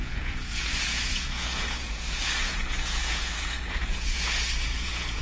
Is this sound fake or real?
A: fake